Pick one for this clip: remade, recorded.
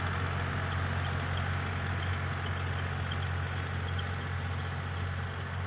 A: recorded